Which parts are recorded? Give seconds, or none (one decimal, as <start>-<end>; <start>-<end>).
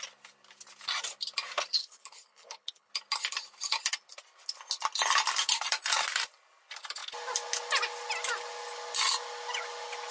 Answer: 0.0-1.8; 2.9-10.1